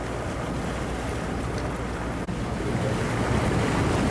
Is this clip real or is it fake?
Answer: real